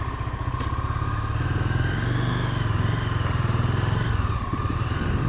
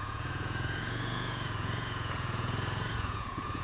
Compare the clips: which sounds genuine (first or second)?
first